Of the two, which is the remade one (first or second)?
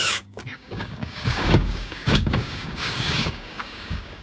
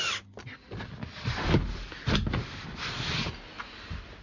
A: first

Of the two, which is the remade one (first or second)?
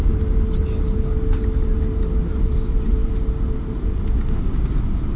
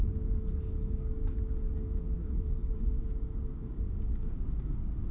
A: second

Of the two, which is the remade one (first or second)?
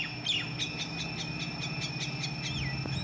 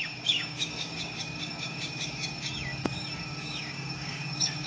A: second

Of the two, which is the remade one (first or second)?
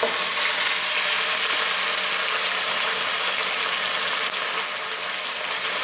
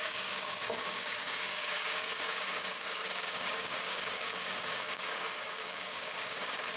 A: second